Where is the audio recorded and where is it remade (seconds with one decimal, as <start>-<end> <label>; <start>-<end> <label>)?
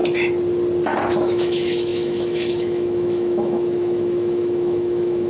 0.0-1.3 recorded; 1.3-5.3 remade